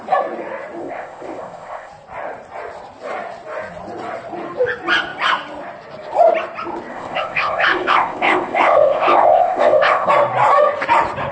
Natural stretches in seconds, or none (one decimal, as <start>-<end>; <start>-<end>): 0.0-0.8; 1.9-6.9; 10.1-11.3